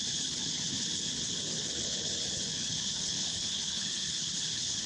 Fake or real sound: fake